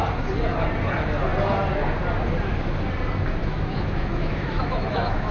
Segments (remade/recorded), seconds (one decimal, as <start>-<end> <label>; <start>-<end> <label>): 0.0-3.4 recorded; 3.4-5.3 remade